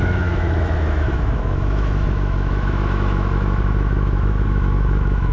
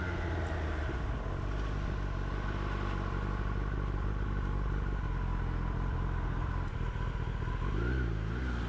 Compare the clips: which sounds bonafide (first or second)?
second